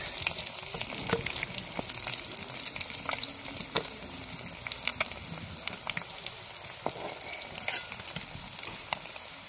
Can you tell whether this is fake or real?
real